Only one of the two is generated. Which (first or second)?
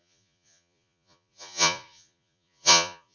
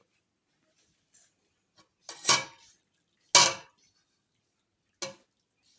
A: first